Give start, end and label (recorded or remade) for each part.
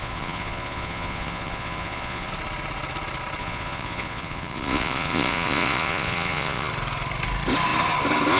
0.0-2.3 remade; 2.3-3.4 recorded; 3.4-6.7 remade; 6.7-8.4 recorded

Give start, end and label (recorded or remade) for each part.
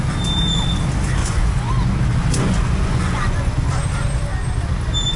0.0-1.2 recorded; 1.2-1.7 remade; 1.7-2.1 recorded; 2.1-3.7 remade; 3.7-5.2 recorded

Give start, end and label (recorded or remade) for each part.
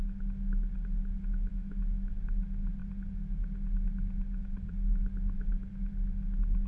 0.0-1.5 recorded; 1.5-2.1 remade; 2.1-6.7 recorded